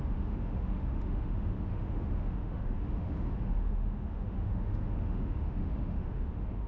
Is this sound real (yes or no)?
no